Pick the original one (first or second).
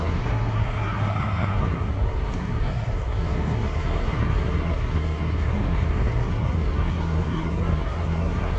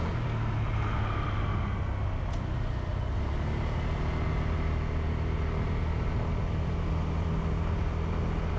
second